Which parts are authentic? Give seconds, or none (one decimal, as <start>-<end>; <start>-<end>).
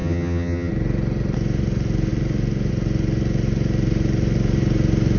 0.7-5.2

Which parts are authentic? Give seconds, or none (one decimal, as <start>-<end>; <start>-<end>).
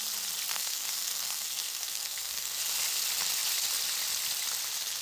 0.0-0.5; 2.6-5.0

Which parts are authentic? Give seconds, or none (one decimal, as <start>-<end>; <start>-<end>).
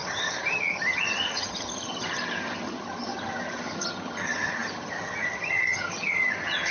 none